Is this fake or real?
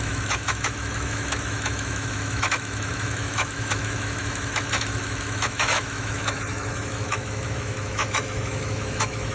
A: fake